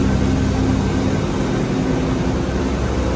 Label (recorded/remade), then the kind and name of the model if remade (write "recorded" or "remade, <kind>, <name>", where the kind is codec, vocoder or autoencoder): recorded